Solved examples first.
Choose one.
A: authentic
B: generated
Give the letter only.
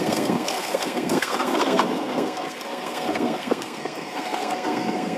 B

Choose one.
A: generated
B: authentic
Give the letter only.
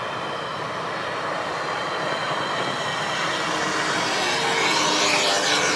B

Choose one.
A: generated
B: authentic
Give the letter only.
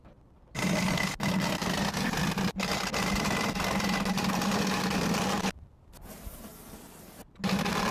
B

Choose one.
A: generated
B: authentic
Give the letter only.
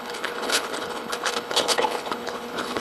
A